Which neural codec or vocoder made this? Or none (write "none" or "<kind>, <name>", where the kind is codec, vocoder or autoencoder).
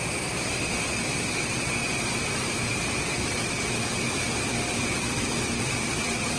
vocoder, BigVGAN v2